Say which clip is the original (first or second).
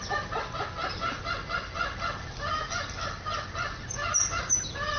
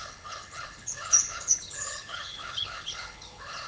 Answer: first